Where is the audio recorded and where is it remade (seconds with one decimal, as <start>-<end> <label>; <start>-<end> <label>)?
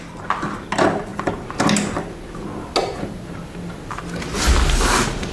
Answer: 0.0-5.3 recorded